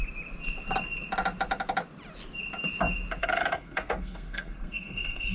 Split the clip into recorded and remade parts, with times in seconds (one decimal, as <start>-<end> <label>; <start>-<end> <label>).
0.0-3.2 recorded; 3.2-5.3 remade

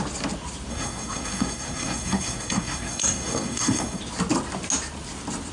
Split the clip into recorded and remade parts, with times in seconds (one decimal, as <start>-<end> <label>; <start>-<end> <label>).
0.0-0.7 recorded; 0.7-4.0 remade; 4.0-5.5 recorded

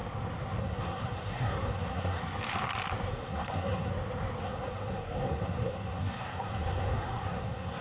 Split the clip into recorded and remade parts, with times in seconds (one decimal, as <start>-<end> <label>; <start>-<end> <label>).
0.0-0.6 recorded; 0.6-2.2 remade; 2.2-3.1 recorded; 3.1-3.9 remade; 3.9-4.4 recorded; 4.4-7.8 remade

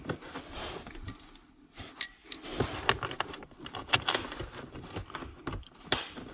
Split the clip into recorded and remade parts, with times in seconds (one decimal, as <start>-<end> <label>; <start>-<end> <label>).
0.0-6.3 recorded

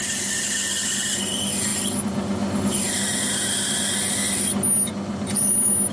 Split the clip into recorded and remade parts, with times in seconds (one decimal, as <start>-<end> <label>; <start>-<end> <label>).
0.0-5.9 recorded